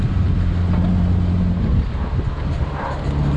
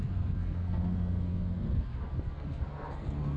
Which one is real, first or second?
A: first